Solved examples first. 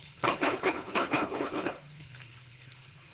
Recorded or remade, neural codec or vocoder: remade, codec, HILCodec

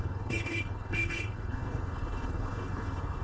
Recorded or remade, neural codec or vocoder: remade, codec, HILCodec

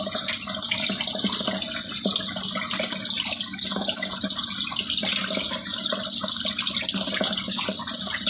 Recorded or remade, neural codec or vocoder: recorded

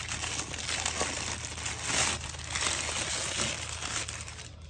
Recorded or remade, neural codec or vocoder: recorded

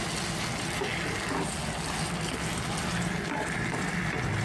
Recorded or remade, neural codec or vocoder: recorded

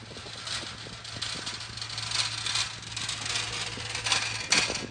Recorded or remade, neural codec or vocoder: recorded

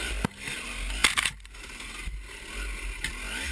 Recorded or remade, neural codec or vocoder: recorded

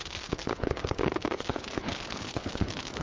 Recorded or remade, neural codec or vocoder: remade, codec, HILCodec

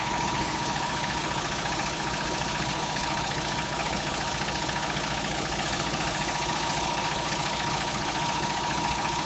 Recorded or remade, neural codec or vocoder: remade, codec, HILCodec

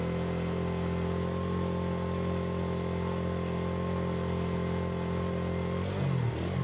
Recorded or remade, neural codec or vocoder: recorded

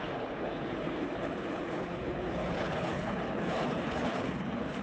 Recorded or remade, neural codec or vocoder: remade, codec, HILCodec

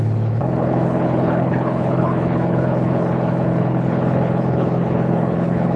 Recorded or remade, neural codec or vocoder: remade, codec, HILCodec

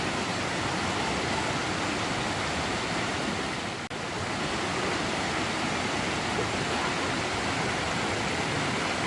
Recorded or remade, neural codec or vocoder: recorded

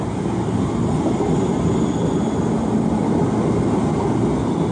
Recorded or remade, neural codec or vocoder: recorded